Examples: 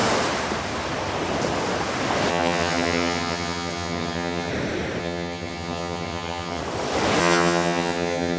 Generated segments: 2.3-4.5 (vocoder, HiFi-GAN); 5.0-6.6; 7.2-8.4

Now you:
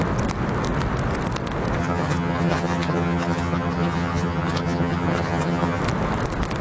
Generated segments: 1.8-5.8 (vocoder, HiFi-GAN)